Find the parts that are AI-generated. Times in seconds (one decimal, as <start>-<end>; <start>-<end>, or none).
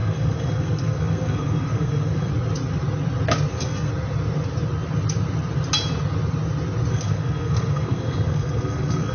0.0-2.3; 3.5-3.9; 6.9-9.1